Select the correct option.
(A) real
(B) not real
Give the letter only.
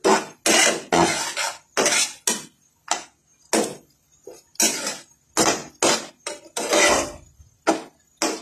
A